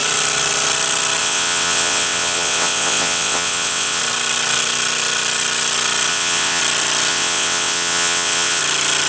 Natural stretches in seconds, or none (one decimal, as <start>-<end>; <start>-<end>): 0.0-1.2; 4.0-6.1; 6.6-7.1; 8.6-9.1